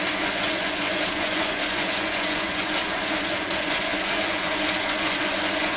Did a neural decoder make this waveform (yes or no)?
yes